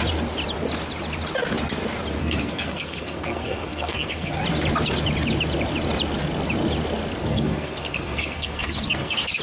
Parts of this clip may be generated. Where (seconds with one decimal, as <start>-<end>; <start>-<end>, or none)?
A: 2.2-4.4; 7.2-9.4